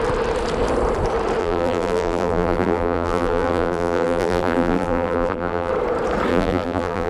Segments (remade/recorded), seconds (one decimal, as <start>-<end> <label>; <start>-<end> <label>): 0.0-1.4 recorded; 1.4-5.7 remade; 5.7-6.3 recorded; 6.3-7.1 remade

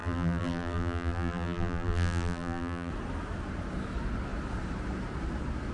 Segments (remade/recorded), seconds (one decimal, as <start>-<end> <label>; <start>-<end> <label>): 0.0-2.9 remade; 2.9-5.7 recorded

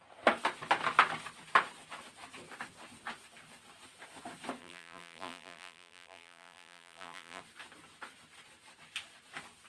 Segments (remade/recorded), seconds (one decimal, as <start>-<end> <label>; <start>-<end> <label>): 0.0-4.6 recorded; 4.6-7.4 remade; 7.4-9.7 recorded

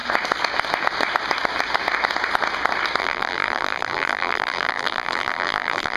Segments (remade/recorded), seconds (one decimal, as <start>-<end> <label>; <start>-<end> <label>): 0.0-3.0 recorded; 3.0-6.0 remade

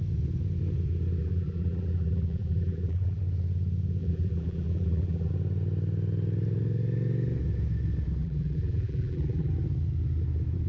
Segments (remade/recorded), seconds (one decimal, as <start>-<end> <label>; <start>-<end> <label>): 0.0-1.2 recorded; 1.2-3.2 remade; 3.2-4.0 recorded; 4.0-5.3 remade; 5.3-8.2 recorded; 8.2-9.5 remade; 9.5-10.7 recorded

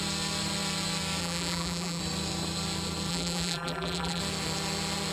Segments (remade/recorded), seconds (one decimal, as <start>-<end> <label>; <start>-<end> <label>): 0.0-1.2 recorded; 1.2-2.0 remade; 2.0-3.1 recorded; 3.1-4.2 remade; 4.2-5.1 recorded

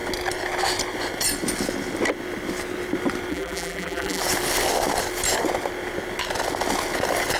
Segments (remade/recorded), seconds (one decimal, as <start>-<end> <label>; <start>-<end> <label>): 0.0-3.3 recorded; 3.3-4.2 remade; 4.2-7.4 recorded

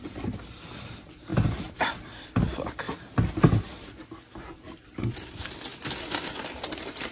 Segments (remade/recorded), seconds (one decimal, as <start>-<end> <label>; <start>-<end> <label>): 0.0-1.3 recorded; 1.3-5.0 remade; 5.0-7.1 recorded